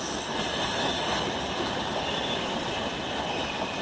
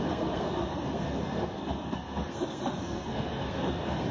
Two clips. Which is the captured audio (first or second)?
first